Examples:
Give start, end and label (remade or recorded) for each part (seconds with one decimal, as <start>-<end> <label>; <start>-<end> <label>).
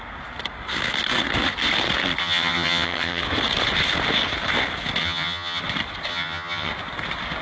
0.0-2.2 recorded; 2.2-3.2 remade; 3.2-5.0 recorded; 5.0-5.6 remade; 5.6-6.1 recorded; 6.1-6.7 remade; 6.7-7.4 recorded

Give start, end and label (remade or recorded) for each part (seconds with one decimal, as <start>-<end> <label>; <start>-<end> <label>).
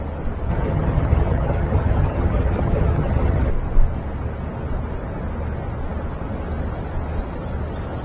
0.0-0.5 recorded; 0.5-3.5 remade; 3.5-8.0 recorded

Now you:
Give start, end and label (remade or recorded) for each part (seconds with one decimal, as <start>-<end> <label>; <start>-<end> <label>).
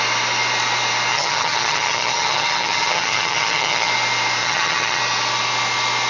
0.0-1.1 recorded; 1.1-3.9 remade; 3.9-4.4 recorded; 4.4-5.0 remade; 5.0-6.1 recorded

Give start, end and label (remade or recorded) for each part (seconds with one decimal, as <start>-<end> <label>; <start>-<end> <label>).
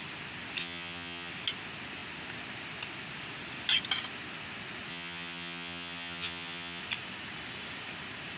0.0-0.6 recorded; 0.6-1.3 remade; 1.3-4.9 recorded; 4.9-6.8 remade; 6.8-8.4 recorded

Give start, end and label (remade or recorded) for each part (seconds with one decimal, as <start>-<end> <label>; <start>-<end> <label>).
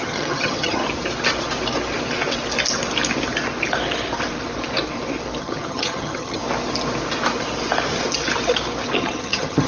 0.0-0.8 remade; 0.8-5.4 recorded; 5.4-6.4 remade; 6.4-9.0 recorded; 9.0-9.7 remade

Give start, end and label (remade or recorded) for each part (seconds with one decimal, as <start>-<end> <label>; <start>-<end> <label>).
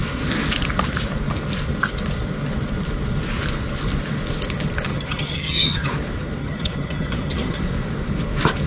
0.0-4.9 recorded; 4.9-5.9 remade; 5.9-6.4 recorded; 6.4-7.6 remade; 7.6-8.7 recorded